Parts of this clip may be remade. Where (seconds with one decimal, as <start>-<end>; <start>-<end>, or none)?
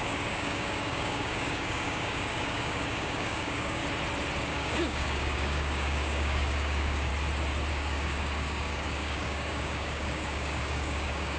0.0-3.8; 4.4-7.1; 7.7-11.4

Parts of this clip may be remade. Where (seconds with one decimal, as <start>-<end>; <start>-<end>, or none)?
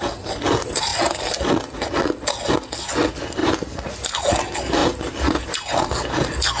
none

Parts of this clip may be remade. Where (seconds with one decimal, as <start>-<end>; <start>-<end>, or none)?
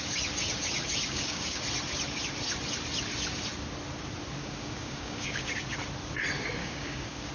1.0-1.6; 4.4-5.5; 6.6-7.3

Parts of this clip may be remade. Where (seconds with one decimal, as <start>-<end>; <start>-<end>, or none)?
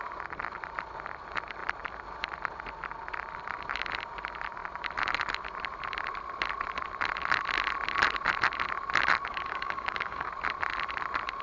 9.3-10.3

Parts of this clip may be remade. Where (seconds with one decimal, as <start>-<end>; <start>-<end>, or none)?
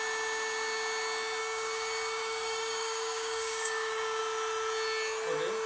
1.4-4.2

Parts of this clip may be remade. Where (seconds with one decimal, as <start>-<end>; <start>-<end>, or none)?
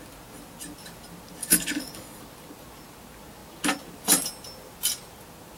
1.4-2.2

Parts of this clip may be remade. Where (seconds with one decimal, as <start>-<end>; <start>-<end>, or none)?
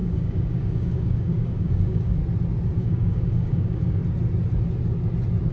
0.0-2.2; 2.8-4.0